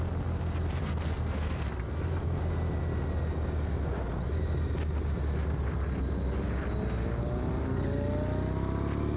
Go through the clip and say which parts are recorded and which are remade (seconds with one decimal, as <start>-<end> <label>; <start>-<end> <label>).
0.0-0.8 recorded; 0.8-2.4 remade; 2.4-9.2 recorded